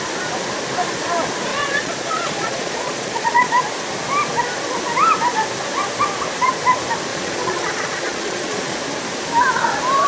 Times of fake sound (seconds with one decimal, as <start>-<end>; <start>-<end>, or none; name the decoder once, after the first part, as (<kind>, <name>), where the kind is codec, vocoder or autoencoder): 1.5-3.6 (vocoder, Vocos); 7.1-8.8